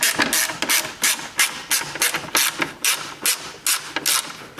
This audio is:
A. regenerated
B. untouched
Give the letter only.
B